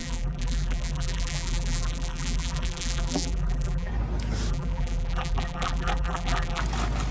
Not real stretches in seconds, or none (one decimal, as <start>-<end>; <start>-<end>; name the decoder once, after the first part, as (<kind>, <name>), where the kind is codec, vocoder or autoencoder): 0.0-3.9 (vocoder, BigVGAN v2); 4.5-6.6